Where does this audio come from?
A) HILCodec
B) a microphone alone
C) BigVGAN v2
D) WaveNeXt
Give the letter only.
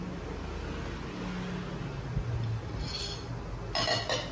B